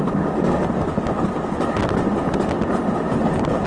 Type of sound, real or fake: real